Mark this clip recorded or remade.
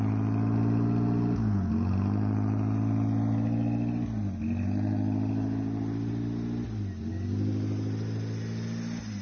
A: recorded